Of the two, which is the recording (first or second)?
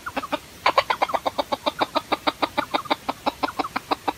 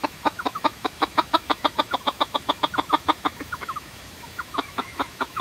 first